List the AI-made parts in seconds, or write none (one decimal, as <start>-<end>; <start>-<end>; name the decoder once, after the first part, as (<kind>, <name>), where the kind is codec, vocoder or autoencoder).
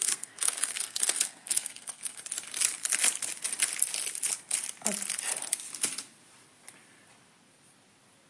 0.0-2.2 (codec, SNAC)